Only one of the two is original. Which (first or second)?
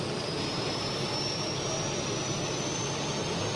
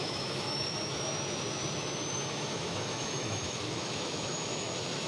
first